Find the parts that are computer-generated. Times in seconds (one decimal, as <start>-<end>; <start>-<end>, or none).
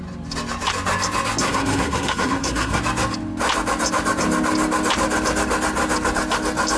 1.4-2.8